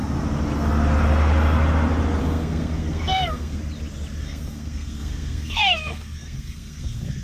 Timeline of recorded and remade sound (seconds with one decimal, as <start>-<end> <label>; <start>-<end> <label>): 0.0-2.2 recorded; 2.2-3.6 remade; 3.6-4.2 recorded; 4.2-7.2 remade